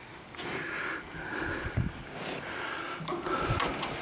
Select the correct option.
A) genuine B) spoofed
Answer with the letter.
A